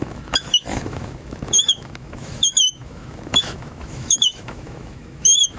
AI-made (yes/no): yes